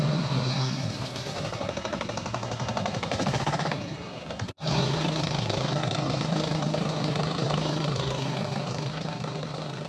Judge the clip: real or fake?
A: fake